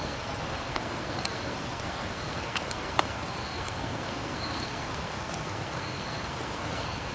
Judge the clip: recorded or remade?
remade